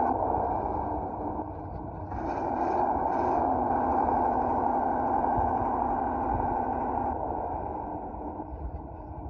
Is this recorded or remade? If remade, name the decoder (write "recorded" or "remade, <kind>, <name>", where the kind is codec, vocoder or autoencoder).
recorded